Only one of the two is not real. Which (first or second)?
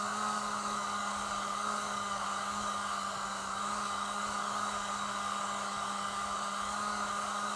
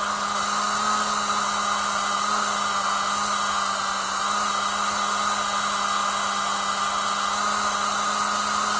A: first